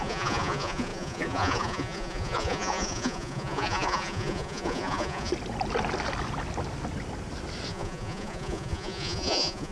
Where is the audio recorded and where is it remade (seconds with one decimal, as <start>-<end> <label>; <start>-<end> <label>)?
0.0-5.3 remade; 5.3-7.7 recorded; 7.7-9.7 remade